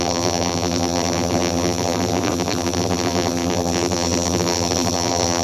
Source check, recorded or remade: remade